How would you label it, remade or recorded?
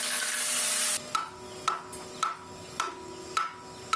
recorded